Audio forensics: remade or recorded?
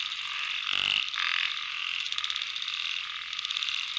recorded